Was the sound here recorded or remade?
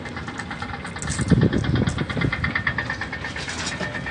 recorded